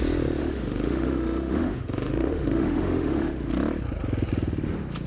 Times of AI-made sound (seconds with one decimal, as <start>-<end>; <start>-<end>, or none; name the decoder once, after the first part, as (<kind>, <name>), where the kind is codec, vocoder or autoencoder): 0.4-3.5 (autoencoder, DAC-VAE)